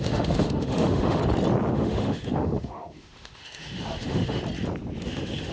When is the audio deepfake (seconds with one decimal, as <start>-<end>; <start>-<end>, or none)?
0.0-1.2; 1.7-4.4; 5.0-5.5